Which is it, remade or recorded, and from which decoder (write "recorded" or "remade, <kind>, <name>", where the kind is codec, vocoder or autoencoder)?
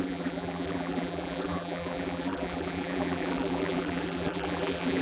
remade, vocoder, BigVGAN v2